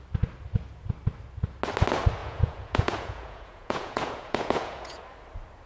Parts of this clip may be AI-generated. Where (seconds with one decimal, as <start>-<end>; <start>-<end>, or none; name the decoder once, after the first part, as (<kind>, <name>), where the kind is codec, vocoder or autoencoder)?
2.2-5.0 (vocoder, Vocos)